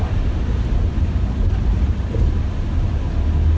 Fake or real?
fake